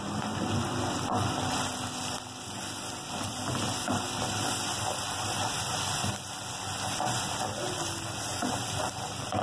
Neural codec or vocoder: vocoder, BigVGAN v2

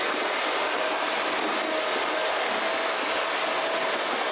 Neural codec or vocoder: none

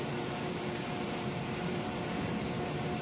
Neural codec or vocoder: vocoder, BigVGAN v2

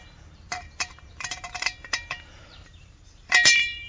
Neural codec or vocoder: vocoder, BigVGAN v2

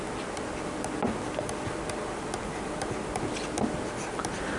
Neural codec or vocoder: none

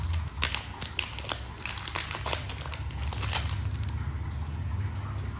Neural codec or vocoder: none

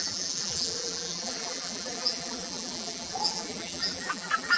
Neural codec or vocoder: vocoder, BigVGAN v2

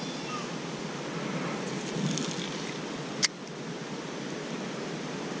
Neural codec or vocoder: none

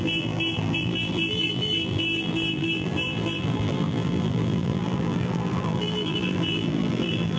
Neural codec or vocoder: vocoder, BigVGAN v2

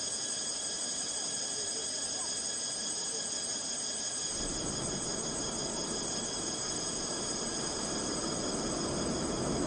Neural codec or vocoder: none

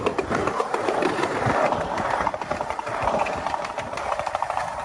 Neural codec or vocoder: vocoder, BigVGAN v2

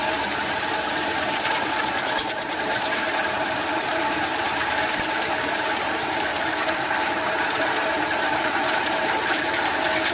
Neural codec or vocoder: vocoder, BigVGAN v2